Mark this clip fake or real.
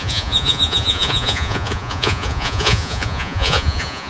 fake